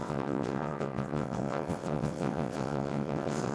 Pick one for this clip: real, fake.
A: fake